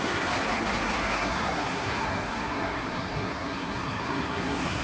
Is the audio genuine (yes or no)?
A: no